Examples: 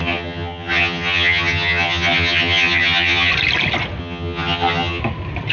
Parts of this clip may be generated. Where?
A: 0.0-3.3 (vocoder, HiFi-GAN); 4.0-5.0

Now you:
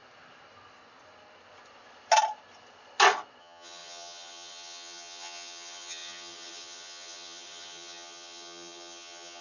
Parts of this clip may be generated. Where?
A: 3.4-9.4 (vocoder, HiFi-GAN)